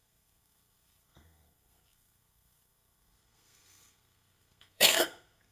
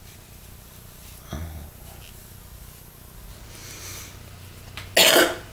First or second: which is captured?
second